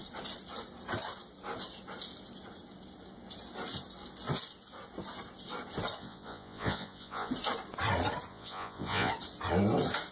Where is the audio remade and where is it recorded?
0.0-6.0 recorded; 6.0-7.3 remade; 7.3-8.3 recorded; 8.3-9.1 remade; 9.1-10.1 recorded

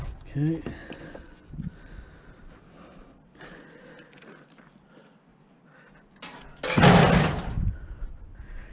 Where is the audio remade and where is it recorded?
0.0-0.8 recorded; 0.8-2.0 remade; 2.0-8.7 recorded

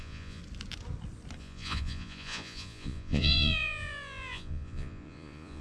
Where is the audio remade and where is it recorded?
0.0-0.4 remade; 0.4-1.4 recorded; 1.4-5.6 remade

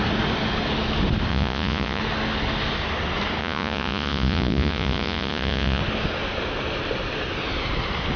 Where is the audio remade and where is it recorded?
0.0-1.3 recorded; 1.3-2.0 remade; 2.0-3.4 recorded; 3.4-5.8 remade; 5.8-8.2 recorded

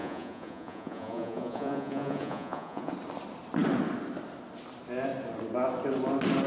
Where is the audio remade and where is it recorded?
0.0-2.9 remade; 2.9-6.5 recorded

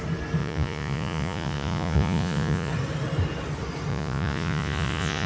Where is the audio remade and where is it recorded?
0.0-0.4 recorded; 0.4-2.7 remade; 2.7-3.9 recorded; 3.9-5.3 remade

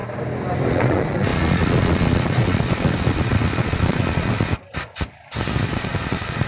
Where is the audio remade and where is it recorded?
0.0-0.7 recorded; 0.7-4.5 remade; 4.5-5.7 recorded; 5.7-6.5 remade

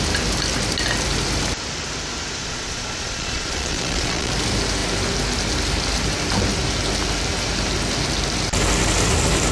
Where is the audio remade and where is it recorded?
0.0-2.4 recorded; 2.4-4.3 remade; 4.3-9.5 recorded